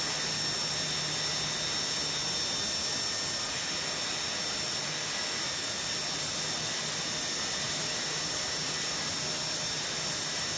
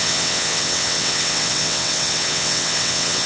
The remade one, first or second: second